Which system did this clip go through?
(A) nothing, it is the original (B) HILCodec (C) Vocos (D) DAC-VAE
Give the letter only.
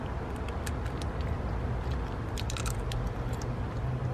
A